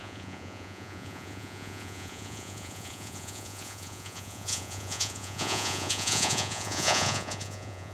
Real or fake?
fake